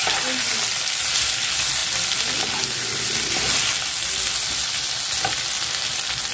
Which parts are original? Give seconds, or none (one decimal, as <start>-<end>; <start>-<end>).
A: 0.0-6.3